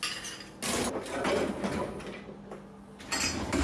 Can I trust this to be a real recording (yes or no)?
yes